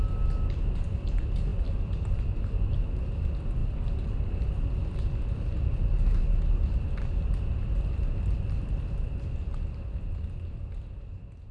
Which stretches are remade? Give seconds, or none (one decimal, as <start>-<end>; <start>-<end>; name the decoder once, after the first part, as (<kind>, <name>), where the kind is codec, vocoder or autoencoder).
none